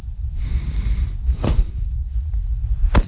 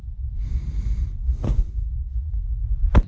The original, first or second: second